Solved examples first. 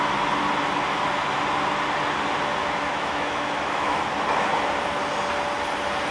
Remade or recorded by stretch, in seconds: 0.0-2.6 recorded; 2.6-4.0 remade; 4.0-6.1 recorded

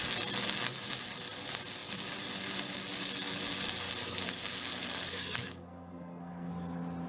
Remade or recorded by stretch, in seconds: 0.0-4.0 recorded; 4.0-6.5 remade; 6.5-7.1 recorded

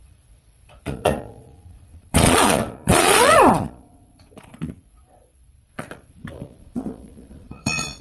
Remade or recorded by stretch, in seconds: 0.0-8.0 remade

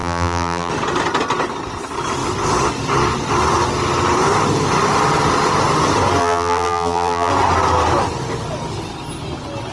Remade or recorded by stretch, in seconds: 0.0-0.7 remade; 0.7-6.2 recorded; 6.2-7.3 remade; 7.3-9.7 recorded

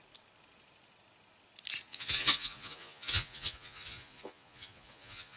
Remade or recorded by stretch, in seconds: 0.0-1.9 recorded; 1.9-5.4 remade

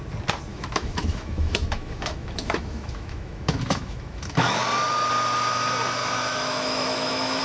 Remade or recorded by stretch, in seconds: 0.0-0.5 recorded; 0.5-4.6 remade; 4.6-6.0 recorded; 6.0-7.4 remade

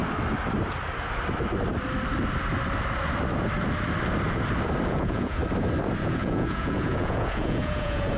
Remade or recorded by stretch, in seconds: 0.0-4.9 recorded; 4.9-5.4 remade; 5.4-6.0 recorded; 6.0-8.2 remade

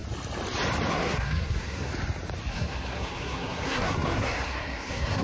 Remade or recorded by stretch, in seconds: 0.0-0.9 recorded; 0.9-1.9 remade; 1.9-2.5 recorded; 2.5-5.2 remade